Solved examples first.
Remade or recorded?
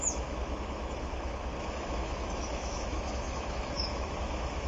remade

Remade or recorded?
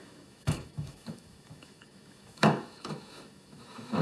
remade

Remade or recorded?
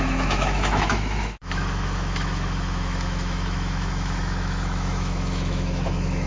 remade